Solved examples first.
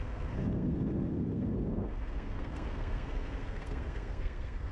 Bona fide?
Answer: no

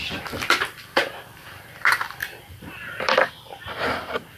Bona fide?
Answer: no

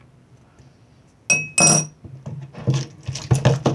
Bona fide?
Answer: yes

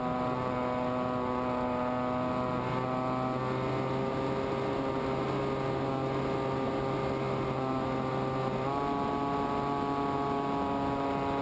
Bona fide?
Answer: yes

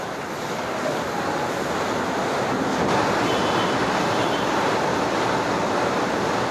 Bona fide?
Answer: yes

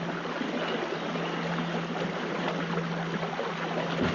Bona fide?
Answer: yes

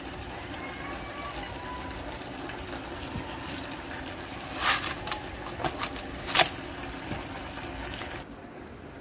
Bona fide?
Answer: yes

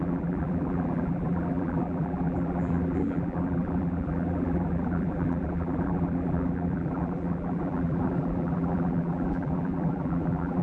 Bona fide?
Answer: no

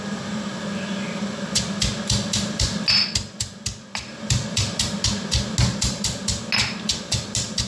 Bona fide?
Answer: yes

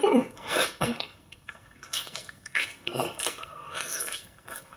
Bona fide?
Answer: no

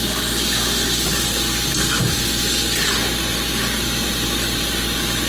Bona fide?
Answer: yes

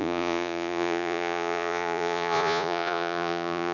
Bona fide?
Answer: no